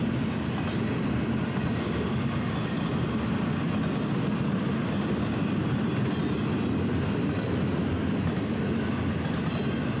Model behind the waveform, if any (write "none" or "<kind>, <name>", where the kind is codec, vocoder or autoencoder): none